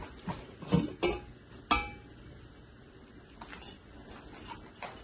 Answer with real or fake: real